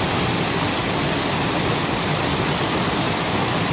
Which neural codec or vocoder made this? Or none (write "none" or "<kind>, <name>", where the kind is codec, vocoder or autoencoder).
none